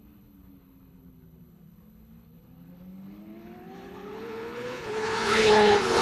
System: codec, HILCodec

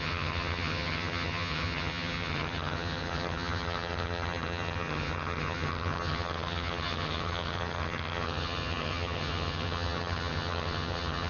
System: vocoder, HiFi-GAN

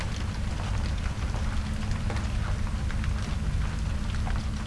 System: none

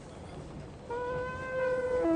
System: none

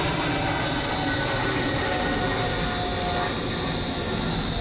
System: none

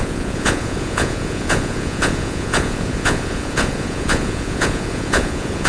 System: vocoder, Vocos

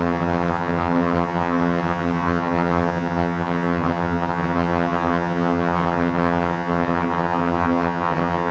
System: vocoder, HiFi-GAN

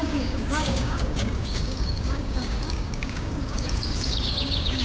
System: codec, DAC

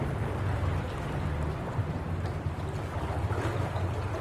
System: none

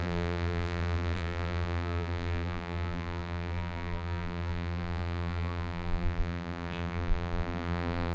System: vocoder, BigVGAN v2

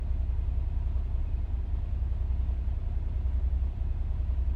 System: none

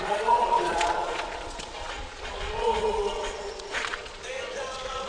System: vocoder, Vocos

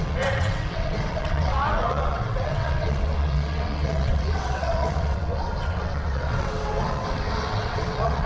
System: vocoder, WaveNeXt